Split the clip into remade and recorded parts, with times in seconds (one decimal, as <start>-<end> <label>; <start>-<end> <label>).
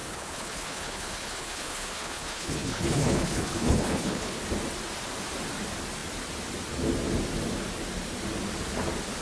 0.0-4.4 remade; 4.4-9.2 recorded